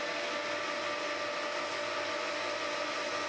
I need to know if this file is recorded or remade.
recorded